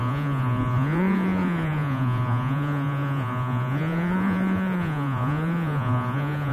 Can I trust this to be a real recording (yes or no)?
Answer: no